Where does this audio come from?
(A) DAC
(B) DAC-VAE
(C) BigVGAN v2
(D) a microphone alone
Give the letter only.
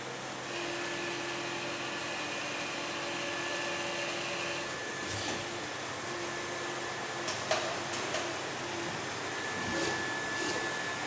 D